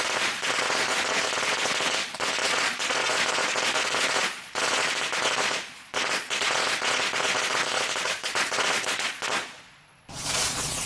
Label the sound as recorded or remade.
remade